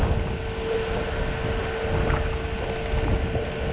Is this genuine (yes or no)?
yes